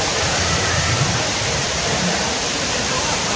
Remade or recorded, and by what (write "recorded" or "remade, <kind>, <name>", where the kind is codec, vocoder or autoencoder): remade, vocoder, BigVGAN v2